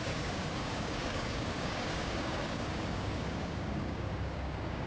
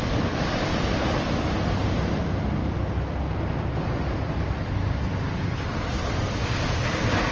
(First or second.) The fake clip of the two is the first